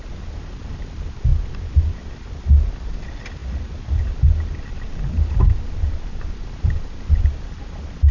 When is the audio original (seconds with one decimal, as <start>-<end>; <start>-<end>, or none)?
0.0-8.1